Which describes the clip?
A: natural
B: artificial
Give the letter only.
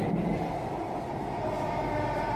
A